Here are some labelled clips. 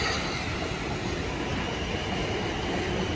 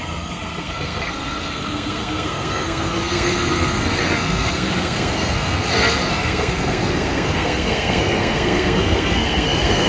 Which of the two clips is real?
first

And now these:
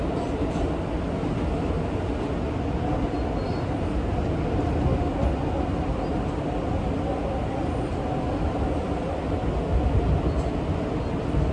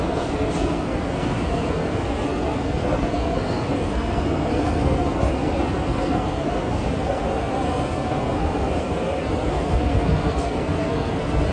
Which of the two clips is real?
first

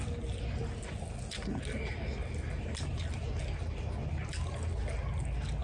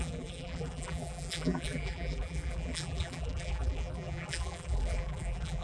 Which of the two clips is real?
first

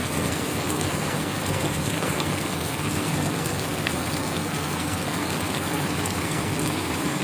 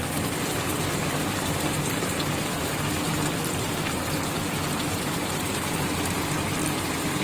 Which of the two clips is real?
second